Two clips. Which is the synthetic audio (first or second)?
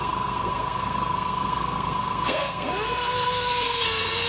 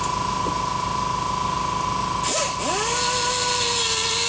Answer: first